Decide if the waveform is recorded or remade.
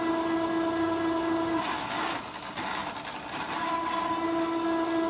recorded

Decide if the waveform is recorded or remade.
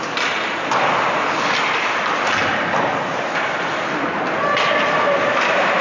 recorded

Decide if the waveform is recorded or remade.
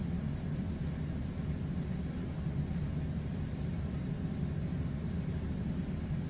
recorded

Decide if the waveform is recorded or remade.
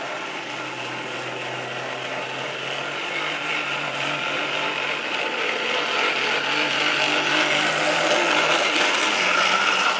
recorded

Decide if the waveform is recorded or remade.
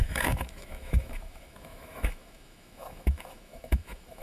remade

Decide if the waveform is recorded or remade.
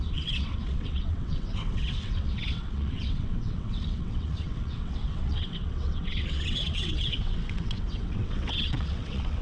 remade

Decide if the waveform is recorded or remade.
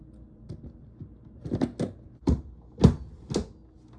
recorded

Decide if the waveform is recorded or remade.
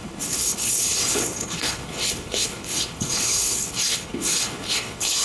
remade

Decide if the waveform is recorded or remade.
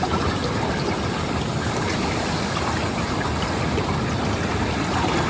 recorded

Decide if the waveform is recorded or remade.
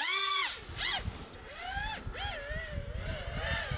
recorded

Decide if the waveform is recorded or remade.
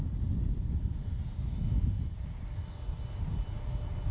recorded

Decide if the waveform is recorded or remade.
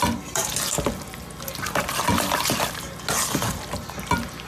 recorded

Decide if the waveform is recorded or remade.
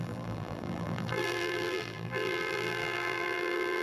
remade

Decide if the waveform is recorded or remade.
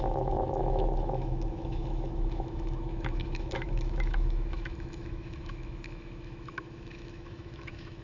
remade